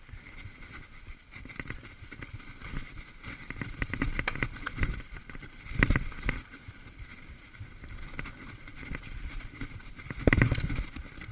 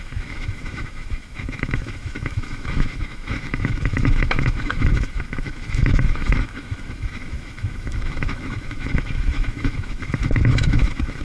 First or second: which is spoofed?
second